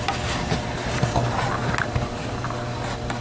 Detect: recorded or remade recorded